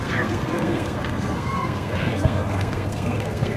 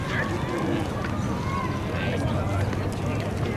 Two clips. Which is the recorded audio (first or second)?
second